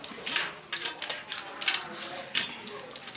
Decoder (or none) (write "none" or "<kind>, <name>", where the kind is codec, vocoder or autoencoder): none